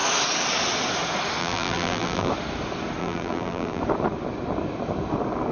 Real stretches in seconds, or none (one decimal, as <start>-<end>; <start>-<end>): 0.0-1.4; 2.3-3.0; 3.8-5.5